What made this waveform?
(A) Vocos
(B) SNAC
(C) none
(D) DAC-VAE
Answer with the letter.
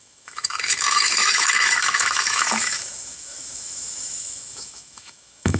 D